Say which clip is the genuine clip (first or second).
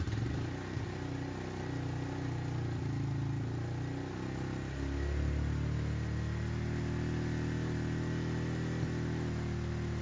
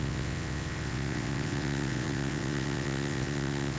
first